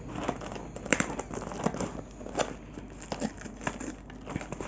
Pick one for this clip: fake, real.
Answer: real